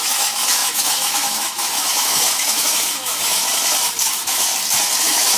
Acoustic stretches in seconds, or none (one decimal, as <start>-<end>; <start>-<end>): 3.4-4.0; 4.5-5.0